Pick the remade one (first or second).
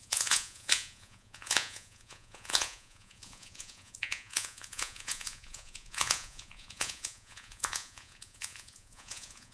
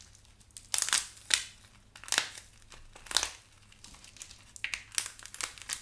first